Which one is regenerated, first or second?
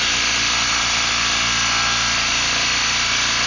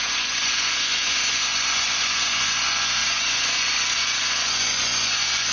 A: second